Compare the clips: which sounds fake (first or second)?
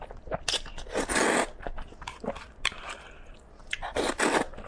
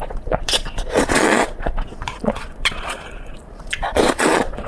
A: second